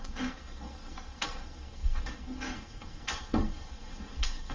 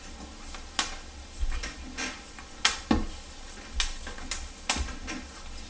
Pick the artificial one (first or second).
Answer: first